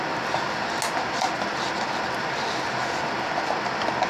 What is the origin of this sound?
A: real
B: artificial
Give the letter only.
A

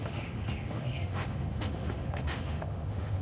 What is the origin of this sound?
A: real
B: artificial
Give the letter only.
B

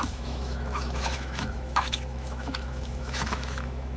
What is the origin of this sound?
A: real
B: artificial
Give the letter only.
B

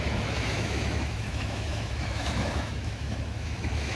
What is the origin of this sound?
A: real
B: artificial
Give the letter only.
B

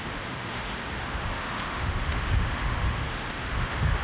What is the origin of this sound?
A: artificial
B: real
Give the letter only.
A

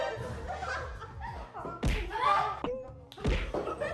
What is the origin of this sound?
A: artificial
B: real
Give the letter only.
B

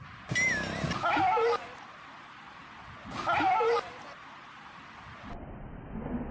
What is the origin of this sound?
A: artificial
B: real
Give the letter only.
B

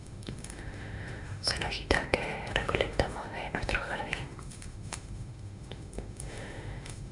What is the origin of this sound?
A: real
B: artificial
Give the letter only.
B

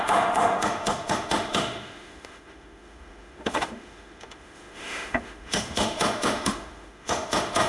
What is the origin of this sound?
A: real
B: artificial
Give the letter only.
B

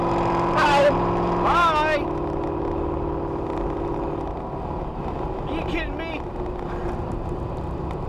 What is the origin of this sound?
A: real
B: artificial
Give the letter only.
A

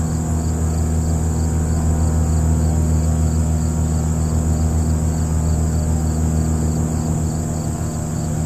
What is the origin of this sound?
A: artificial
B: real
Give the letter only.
B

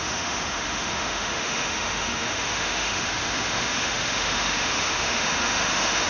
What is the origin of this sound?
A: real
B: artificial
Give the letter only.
B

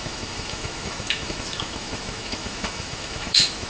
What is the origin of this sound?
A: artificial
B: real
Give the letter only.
A